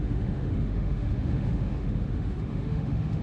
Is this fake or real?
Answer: fake